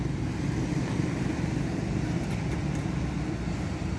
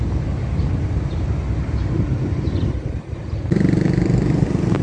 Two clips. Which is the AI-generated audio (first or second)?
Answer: second